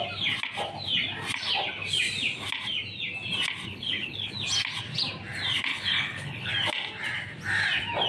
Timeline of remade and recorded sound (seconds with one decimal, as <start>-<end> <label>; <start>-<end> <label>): 0.0-3.7 recorded; 3.7-4.3 remade; 4.3-5.7 recorded; 5.7-6.5 remade; 6.5-8.1 recorded